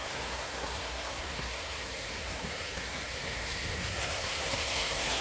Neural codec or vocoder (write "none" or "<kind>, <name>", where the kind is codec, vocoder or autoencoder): codec, SNAC